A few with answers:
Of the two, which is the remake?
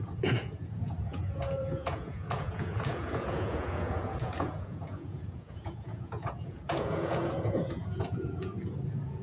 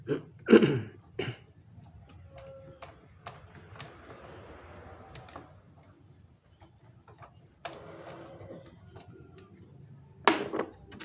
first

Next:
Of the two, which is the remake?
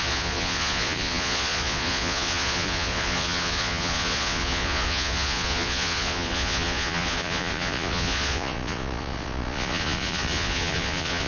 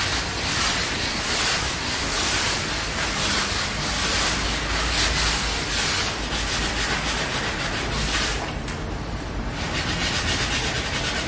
first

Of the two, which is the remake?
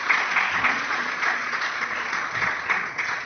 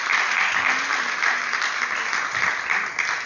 first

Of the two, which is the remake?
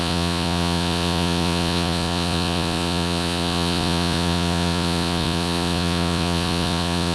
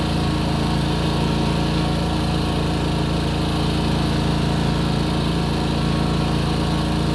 first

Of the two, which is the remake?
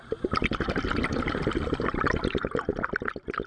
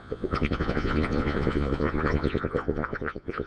second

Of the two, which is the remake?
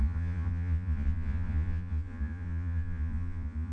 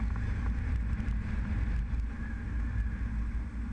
first